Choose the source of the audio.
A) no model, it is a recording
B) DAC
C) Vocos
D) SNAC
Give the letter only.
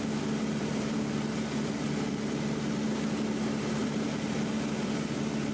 A